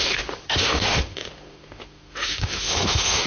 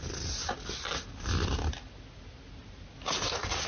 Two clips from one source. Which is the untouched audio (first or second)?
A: second